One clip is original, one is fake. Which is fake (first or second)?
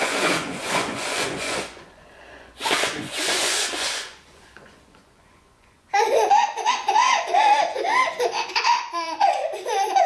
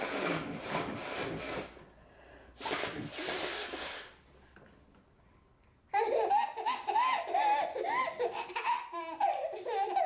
first